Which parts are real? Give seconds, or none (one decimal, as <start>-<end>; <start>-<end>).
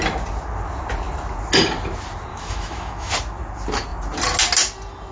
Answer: 0.0-2.3; 3.1-5.1